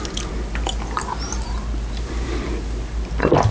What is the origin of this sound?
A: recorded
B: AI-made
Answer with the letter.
A